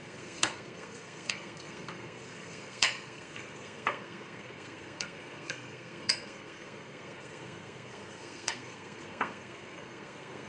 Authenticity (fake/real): fake